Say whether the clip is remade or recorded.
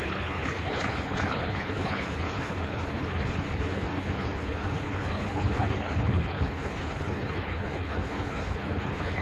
remade